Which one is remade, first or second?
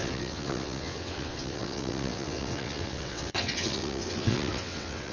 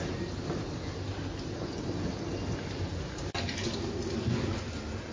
first